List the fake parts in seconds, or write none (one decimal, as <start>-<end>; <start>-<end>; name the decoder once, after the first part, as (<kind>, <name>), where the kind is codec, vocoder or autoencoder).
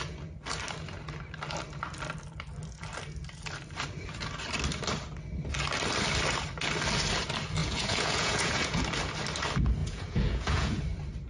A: 7.6-8.8 (vocoder, Vocos); 9.8-10.8